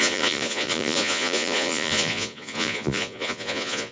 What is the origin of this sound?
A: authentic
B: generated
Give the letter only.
B